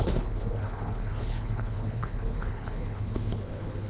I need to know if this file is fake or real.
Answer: fake